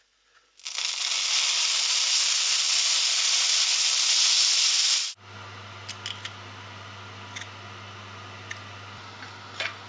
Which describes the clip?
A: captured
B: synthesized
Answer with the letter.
A